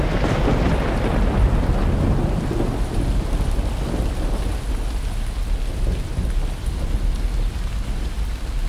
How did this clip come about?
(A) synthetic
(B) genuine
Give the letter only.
B